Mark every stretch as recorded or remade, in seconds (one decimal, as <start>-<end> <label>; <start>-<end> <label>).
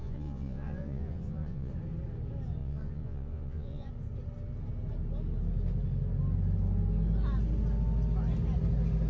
0.0-1.7 remade; 1.7-2.6 recorded; 2.6-3.9 remade; 3.9-9.1 recorded